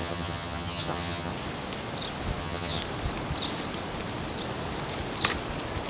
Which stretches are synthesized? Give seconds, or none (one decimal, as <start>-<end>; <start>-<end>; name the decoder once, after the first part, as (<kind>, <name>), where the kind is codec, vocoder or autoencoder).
0.0-1.3 (vocoder, HiFi-GAN); 2.4-2.8